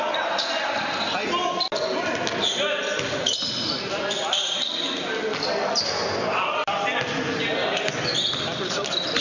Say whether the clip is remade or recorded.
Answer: recorded